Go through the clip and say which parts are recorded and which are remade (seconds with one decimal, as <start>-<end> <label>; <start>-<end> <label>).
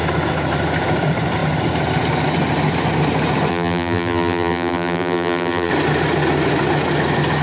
0.0-3.5 recorded; 3.5-5.7 remade; 5.7-7.4 recorded